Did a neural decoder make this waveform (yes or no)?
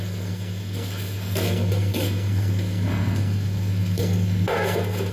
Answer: yes